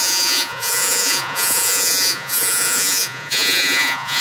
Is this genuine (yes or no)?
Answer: no